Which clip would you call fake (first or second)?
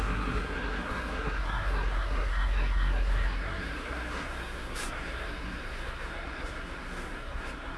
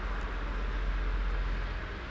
first